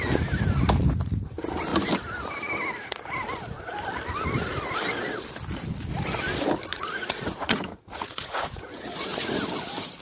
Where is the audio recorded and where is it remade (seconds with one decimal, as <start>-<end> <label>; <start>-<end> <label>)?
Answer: 0.0-6.7 recorded; 6.7-9.4 remade; 9.4-10.0 recorded